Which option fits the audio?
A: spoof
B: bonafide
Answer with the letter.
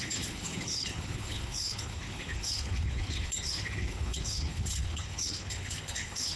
A